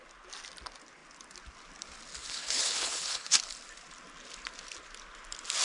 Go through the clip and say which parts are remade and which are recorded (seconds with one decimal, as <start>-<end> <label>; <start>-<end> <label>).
0.0-2.2 recorded; 2.2-3.3 remade; 3.3-5.6 recorded